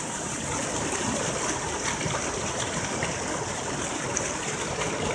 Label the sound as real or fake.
real